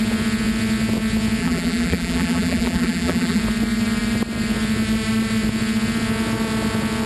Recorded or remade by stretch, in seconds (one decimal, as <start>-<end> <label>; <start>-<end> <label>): 0.0-1.4 recorded; 1.4-3.4 remade; 3.4-7.1 recorded